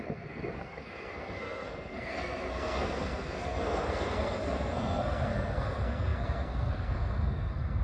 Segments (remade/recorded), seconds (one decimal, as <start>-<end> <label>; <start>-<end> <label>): 0.0-7.8 remade

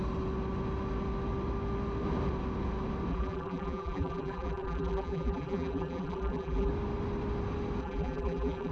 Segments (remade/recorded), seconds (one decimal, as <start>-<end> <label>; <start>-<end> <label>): 0.0-3.1 recorded; 3.1-6.7 remade; 6.7-7.8 recorded; 7.8-8.7 remade